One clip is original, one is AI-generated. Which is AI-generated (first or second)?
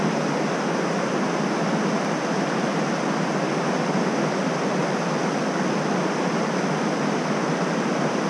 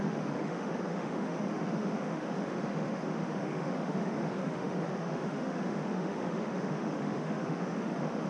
second